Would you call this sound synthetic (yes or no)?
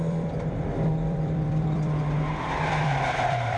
yes